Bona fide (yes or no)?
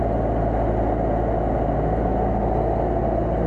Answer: yes